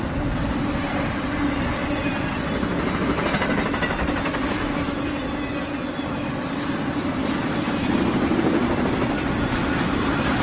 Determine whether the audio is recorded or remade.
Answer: recorded